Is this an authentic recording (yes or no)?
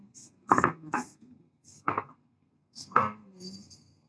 no